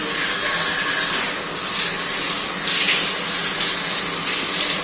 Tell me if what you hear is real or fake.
real